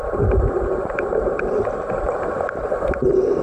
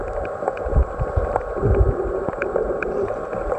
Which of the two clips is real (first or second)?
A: second